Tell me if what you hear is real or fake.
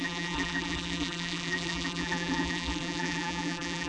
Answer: fake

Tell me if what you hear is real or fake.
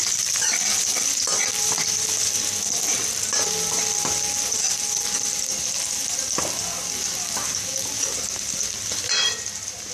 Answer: fake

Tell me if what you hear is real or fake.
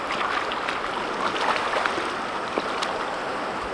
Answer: real